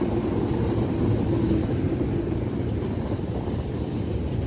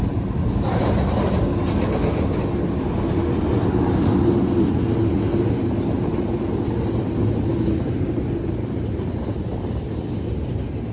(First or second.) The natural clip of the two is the second